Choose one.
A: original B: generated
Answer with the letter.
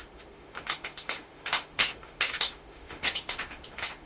B